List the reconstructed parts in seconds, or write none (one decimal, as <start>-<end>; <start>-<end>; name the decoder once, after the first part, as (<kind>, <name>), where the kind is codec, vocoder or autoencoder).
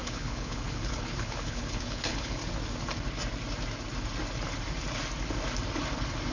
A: 0.0-2.4 (codec, HILCodec)